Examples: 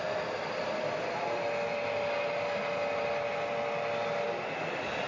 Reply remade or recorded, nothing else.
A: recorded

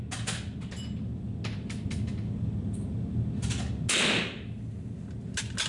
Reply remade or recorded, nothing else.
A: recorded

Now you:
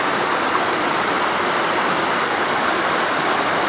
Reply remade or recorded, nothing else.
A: recorded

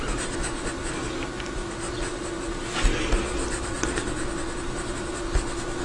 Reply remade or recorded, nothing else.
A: recorded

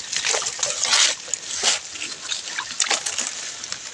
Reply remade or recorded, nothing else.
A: recorded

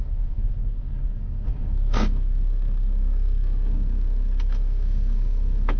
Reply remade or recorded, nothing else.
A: remade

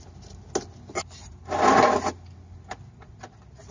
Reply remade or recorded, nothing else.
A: recorded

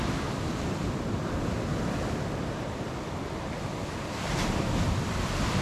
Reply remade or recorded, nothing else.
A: recorded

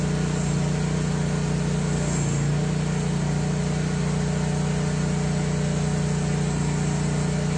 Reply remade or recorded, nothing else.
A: recorded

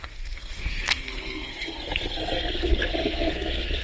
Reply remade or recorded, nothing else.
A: remade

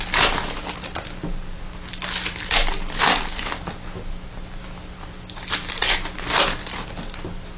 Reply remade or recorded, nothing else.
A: recorded